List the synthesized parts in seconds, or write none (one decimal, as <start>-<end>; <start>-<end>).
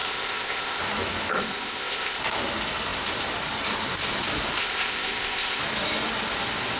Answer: 0.0-0.8; 1.3-2.2; 4.6-5.6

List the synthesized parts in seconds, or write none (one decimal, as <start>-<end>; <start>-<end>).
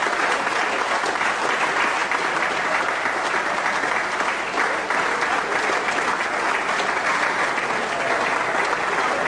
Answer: none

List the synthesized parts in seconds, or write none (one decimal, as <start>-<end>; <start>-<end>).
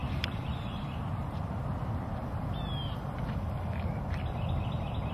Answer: 0.0-1.7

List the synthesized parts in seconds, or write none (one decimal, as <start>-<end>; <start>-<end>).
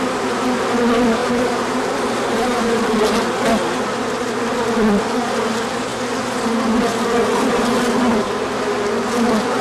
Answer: 1.2-1.9; 2.3-3.0